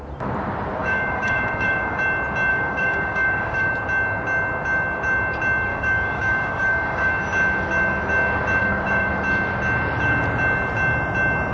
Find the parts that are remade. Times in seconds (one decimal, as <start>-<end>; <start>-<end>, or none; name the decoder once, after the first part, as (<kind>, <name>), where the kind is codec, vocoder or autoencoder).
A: 0.8-2.0 (codec, DAC); 2.5-3.7; 5.7-7.1; 8.6-9.1